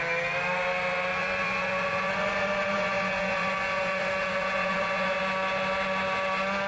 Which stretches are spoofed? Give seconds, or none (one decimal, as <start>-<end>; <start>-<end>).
1.2-5.2